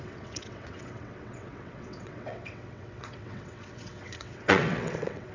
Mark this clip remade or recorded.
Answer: remade